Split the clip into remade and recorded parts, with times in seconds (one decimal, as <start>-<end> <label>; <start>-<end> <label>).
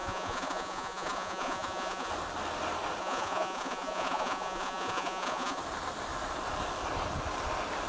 0.0-2.1 remade; 2.1-3.0 recorded; 3.0-5.6 remade; 5.6-7.9 recorded